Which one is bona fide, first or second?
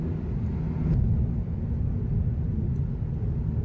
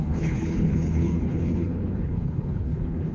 first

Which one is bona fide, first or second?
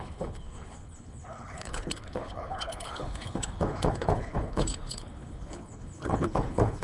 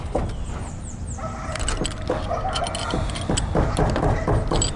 second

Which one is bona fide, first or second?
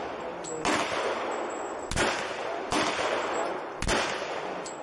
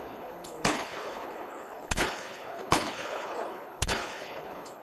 first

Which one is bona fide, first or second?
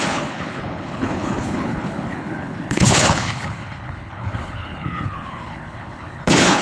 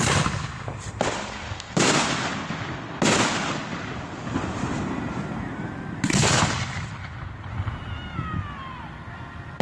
second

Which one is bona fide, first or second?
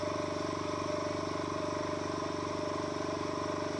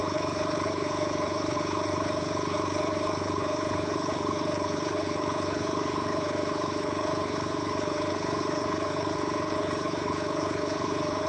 first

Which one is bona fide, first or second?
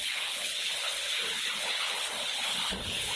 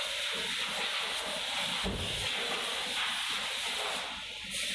second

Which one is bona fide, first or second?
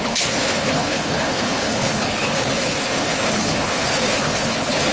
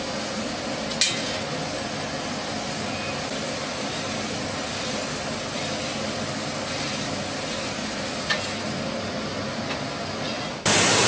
second